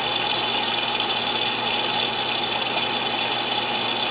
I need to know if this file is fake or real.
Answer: real